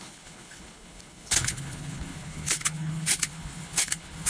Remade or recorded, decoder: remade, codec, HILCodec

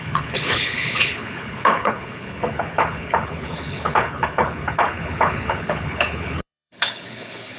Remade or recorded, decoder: remade, codec, HILCodec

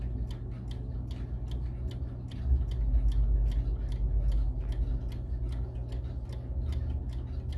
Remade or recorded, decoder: recorded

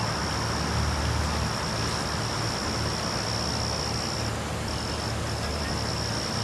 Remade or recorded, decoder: recorded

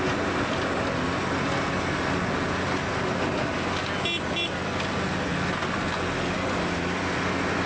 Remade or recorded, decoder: recorded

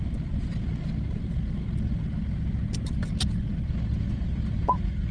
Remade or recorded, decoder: recorded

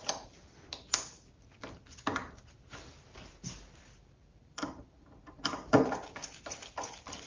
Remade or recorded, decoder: recorded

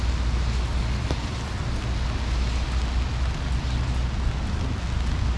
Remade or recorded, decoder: recorded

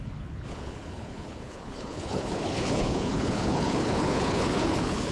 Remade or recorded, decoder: remade, codec, HILCodec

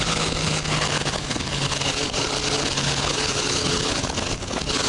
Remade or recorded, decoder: remade, codec, HILCodec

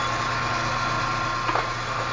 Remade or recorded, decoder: recorded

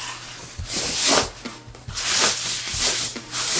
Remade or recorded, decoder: recorded